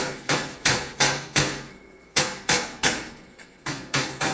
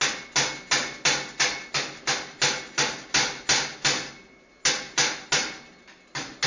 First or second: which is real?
second